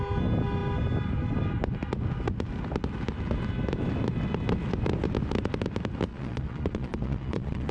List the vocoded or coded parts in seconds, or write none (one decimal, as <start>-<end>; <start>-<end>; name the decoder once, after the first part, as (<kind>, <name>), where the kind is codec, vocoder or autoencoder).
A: 6.1-7.7 (vocoder, Vocos)